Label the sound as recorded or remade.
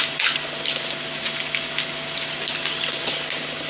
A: recorded